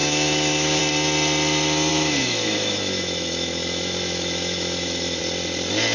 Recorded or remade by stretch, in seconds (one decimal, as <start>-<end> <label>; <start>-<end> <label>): 0.0-0.8 remade; 0.8-1.9 recorded; 1.9-5.2 remade; 5.2-5.9 recorded